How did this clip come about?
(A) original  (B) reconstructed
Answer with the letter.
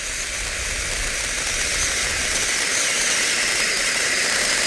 A